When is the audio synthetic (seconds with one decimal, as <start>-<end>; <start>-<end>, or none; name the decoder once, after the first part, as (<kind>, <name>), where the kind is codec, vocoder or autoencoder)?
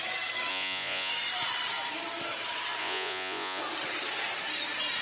0.5-1.1 (vocoder, Vocos); 2.8-3.6